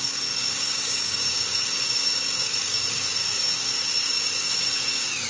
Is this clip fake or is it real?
fake